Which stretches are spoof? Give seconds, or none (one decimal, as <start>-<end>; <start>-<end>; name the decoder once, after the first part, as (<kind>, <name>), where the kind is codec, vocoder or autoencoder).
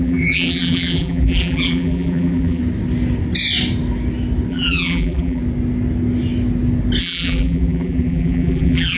0.0-2.6 (vocoder, BigVGAN v2); 4.5-5.4; 7.0-9.0